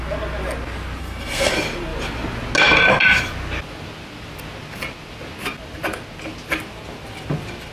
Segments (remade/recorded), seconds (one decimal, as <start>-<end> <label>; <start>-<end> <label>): 0.0-1.0 recorded; 1.0-1.5 remade; 1.5-7.7 recorded